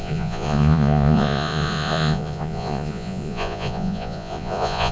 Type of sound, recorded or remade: remade